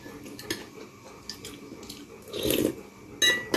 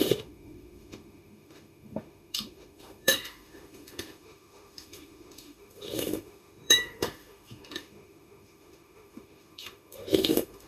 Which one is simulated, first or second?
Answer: second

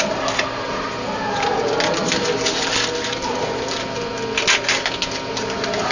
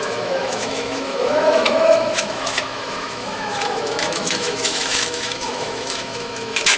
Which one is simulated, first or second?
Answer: second